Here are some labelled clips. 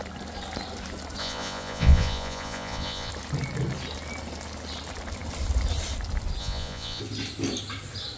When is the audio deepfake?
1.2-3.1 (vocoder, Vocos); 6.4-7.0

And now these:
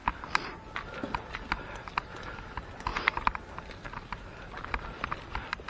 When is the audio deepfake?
none

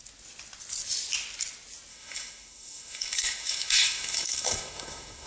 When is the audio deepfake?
1.9-5.3 (autoencoder, DAC-VAE)